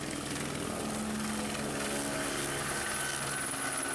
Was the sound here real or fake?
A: real